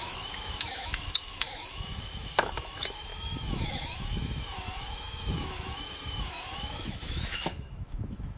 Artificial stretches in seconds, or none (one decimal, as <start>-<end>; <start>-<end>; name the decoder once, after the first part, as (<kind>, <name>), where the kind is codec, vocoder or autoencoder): 0.0-8.4 (autoencoder, DAC-VAE)